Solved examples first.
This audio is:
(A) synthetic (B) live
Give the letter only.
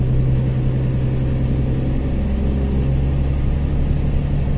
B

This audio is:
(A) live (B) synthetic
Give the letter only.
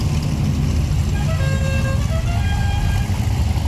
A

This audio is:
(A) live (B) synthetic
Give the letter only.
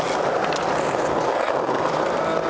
A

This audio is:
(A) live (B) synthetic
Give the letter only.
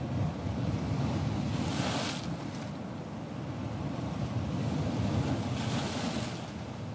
A